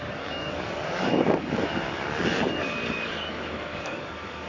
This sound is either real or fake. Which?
fake